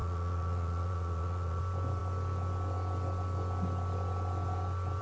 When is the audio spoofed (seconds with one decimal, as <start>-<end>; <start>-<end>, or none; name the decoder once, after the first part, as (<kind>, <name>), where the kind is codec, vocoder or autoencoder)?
0.0-1.6 (vocoder, Vocos)